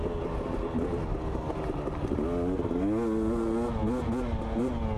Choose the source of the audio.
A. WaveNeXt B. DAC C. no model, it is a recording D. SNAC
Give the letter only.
C